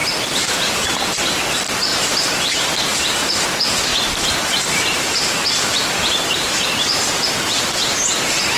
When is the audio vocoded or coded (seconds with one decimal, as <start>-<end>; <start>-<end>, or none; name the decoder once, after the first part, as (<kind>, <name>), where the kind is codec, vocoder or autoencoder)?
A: 0.0-0.6 (vocoder, BigVGAN v2); 1.9-3.3; 3.9-7.3